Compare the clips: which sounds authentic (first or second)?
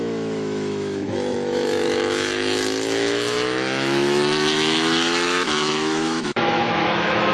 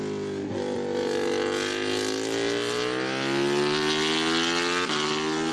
second